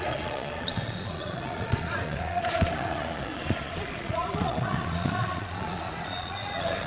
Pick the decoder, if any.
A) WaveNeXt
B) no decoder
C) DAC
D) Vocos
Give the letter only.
D